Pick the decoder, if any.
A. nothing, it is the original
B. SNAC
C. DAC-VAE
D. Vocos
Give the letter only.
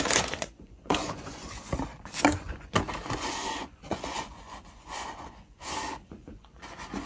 D